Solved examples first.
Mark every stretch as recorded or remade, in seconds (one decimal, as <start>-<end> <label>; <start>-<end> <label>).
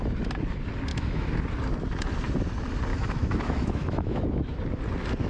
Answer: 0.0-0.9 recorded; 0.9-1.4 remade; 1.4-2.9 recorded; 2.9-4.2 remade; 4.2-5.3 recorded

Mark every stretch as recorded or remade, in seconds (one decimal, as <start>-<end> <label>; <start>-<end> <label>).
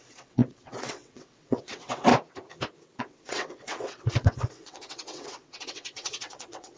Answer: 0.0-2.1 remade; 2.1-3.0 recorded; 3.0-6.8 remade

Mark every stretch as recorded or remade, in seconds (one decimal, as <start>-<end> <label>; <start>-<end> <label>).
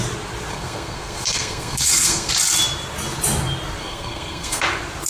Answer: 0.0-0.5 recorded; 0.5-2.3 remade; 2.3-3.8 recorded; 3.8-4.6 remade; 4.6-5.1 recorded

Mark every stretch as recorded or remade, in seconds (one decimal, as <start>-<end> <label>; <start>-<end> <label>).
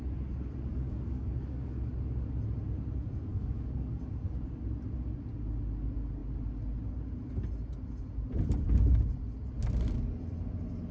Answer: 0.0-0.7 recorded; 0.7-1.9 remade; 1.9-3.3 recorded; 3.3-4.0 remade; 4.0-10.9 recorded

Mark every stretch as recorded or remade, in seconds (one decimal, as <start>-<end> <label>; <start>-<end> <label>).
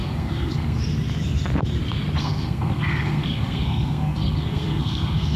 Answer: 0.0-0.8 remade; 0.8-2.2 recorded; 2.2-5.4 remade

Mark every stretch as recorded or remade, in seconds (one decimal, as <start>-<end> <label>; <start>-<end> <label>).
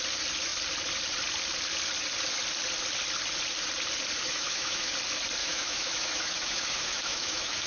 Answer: 0.0-4.2 recorded; 4.2-4.9 remade; 4.9-5.4 recorded; 5.4-7.7 remade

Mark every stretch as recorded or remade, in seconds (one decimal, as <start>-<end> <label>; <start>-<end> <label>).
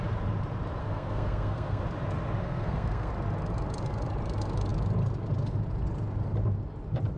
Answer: 0.0-0.8 recorded; 0.8-1.8 remade; 1.8-2.4 recorded; 2.4-3.1 remade; 3.1-7.2 recorded